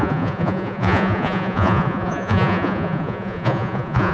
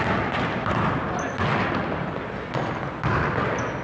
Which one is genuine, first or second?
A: second